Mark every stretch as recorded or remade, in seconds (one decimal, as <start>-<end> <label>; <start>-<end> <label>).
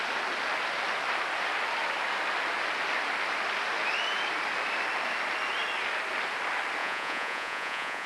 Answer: 0.0-6.8 recorded; 6.8-8.1 remade